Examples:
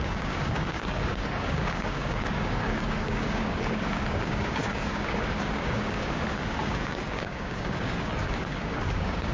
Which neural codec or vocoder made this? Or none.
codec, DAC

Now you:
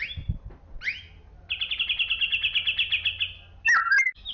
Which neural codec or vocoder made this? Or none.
none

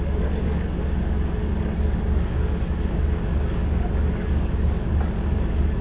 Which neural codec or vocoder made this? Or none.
codec, DAC